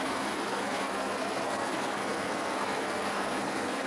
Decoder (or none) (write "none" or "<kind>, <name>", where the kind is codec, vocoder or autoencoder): codec, SNAC